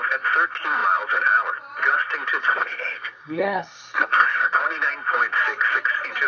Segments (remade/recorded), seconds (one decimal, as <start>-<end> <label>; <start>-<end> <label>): 0.0-2.4 recorded; 2.4-4.6 remade; 4.6-6.3 recorded